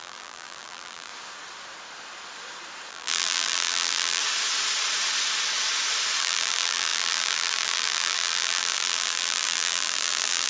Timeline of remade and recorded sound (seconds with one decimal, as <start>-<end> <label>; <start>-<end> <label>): 0.0-1.1 remade; 1.1-2.9 recorded; 2.9-4.2 remade; 4.2-6.2 recorded; 6.2-10.5 remade